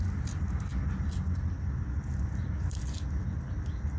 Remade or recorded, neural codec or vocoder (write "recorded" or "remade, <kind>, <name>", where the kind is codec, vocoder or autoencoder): recorded